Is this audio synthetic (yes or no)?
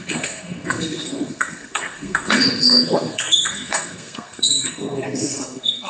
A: yes